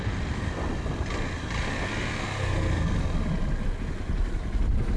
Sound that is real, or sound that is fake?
real